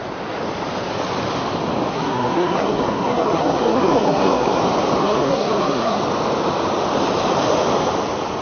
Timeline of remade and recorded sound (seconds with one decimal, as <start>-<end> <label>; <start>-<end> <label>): 0.0-1.9 recorded; 1.9-4.6 remade; 4.6-5.0 recorded; 5.0-6.0 remade; 6.0-8.4 recorded